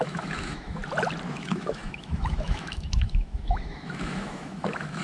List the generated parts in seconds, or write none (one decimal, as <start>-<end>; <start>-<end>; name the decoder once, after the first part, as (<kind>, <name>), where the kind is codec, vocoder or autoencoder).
0.0-0.8 (autoencoder, DAC-VAE); 1.3-5.0